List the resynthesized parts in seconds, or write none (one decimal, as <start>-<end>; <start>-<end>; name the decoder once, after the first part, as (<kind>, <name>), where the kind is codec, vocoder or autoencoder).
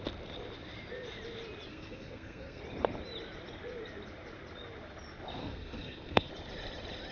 1.7-2.6 (codec, SNAC); 5.4-6.3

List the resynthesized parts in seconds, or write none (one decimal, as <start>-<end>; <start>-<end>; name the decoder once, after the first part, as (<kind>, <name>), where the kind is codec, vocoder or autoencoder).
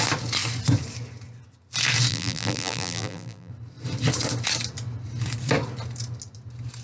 2.1-3.5 (vocoder, BigVGAN v2)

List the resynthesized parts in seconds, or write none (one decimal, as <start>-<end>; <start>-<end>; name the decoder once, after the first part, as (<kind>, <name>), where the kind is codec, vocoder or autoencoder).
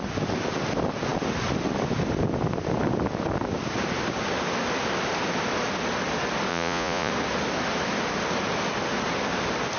6.5-7.1 (vocoder, Vocos)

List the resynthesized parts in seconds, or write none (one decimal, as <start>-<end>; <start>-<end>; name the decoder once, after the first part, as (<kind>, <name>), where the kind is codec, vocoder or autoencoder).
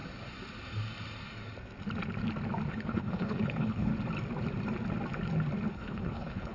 2.7-3.9 (codec, HILCodec); 5.7-6.5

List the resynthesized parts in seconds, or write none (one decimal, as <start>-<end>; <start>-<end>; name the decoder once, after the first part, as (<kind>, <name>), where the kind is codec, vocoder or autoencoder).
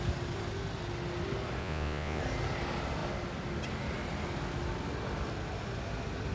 1.6-2.2 (vocoder, Vocos)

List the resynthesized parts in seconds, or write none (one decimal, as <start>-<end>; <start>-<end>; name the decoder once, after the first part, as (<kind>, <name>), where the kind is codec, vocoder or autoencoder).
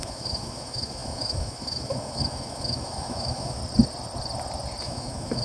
0.0-3.6 (autoencoder, DAC-VAE); 4.8-5.4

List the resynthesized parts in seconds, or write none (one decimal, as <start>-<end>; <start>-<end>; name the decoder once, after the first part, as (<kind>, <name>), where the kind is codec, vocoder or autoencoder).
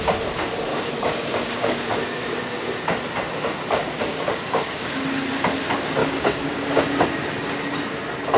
0.7-1.9 (codec, DAC); 3.8-4.9; 6.0-7.0